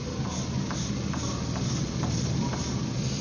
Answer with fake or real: real